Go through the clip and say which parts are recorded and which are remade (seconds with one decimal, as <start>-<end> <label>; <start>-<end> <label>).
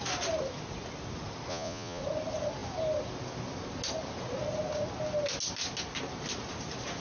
0.0-1.5 recorded; 1.5-2.0 remade; 2.0-7.0 recorded